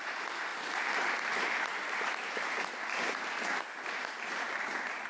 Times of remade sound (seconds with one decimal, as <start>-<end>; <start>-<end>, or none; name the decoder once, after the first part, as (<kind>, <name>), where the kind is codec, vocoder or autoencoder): none